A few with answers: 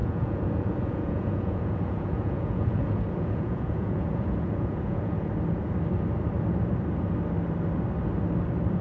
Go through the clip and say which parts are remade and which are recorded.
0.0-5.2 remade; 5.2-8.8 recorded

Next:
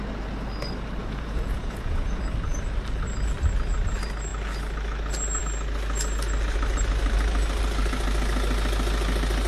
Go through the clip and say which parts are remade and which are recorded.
0.0-1.0 recorded; 1.0-2.2 remade; 2.2-9.5 recorded

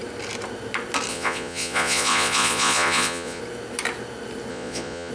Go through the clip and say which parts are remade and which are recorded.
0.0-1.1 recorded; 1.1-3.4 remade; 3.4-4.5 recorded; 4.5-5.1 remade

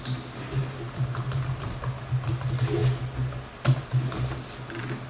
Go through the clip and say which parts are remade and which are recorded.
0.0-5.1 recorded